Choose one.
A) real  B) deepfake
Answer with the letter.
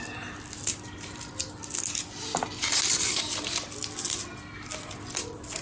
A